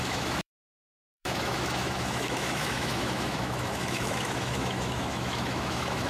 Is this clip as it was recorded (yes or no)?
no